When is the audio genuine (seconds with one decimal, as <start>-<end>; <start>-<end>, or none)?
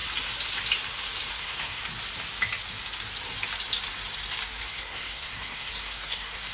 0.0-1.3; 1.8-4.7